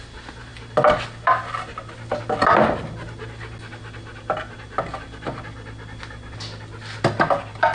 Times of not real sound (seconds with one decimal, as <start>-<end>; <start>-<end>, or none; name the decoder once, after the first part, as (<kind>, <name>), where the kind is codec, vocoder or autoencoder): none